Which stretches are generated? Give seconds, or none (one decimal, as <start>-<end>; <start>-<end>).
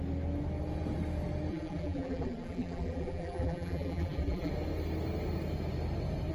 1.5-4.5